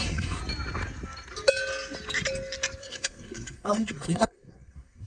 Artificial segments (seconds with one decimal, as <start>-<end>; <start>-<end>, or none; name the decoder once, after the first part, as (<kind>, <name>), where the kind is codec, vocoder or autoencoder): 0.0-0.4 (codec, SNAC); 2.8-5.1